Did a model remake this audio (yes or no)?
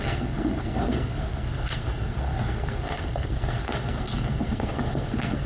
yes